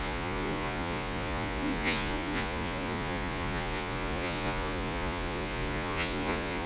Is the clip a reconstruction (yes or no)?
yes